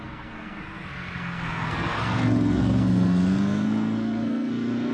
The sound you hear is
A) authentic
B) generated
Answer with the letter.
B